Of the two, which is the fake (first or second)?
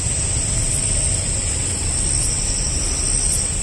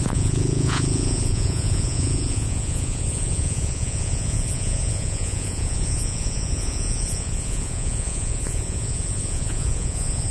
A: second